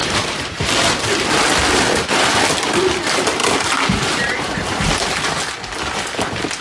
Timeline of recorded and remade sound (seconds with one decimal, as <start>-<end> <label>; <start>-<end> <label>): 0.0-1.1 remade; 1.1-3.4 recorded; 3.4-4.9 remade; 4.9-6.6 recorded